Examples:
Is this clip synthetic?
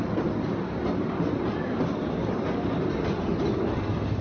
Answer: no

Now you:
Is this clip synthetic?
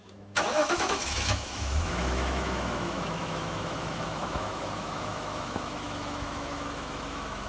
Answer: yes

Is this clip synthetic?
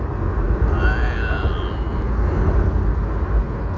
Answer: no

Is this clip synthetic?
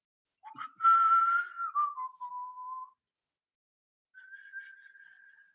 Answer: no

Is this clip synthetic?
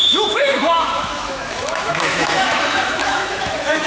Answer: yes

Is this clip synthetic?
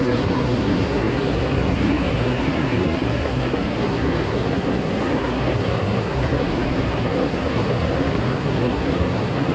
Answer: yes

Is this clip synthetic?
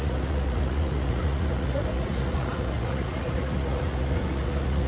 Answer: yes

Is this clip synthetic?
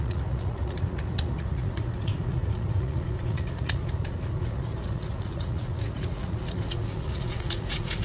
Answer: yes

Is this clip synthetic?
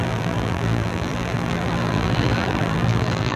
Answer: yes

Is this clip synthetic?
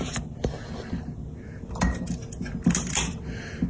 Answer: no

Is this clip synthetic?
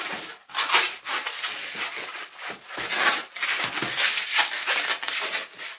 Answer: no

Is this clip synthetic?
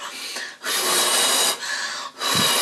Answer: no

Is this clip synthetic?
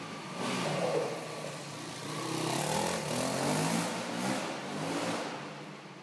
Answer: no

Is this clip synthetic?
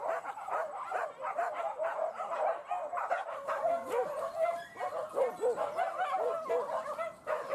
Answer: no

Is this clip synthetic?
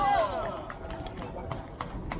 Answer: no